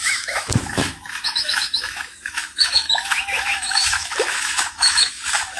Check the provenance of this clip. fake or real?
fake